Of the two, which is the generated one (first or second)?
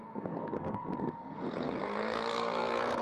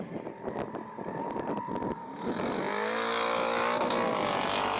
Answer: first